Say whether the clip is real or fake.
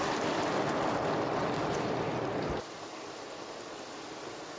real